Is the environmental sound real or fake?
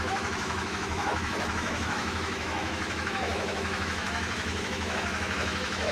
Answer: fake